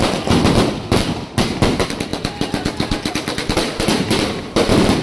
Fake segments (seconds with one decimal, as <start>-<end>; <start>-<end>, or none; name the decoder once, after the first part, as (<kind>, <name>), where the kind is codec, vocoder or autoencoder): none